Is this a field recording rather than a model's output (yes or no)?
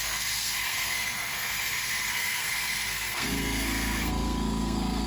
no